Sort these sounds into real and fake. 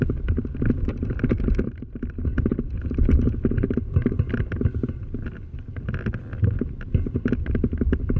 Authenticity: real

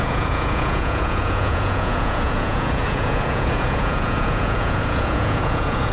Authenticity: fake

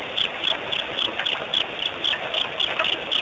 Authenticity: real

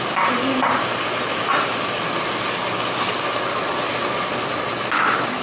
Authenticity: real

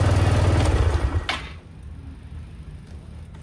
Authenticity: real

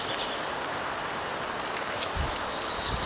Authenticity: real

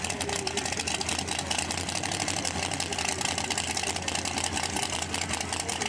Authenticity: real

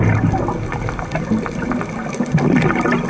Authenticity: real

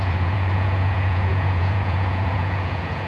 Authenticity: fake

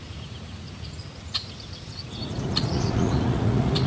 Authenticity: fake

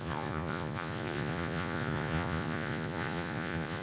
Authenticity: fake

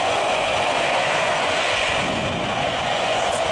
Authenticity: fake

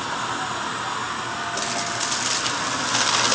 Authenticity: real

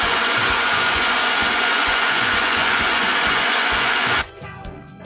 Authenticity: fake